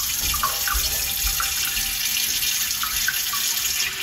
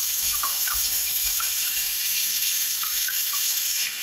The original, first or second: first